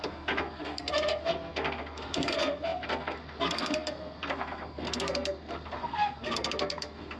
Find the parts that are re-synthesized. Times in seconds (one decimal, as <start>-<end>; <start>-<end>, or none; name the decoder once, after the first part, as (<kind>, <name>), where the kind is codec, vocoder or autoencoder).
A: 0.0-7.2 (codec, SNAC)